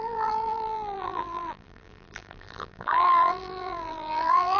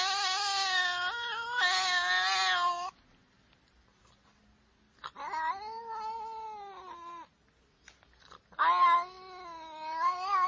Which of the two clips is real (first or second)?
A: second